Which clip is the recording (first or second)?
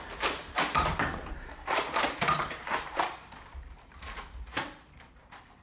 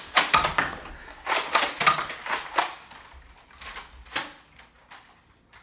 second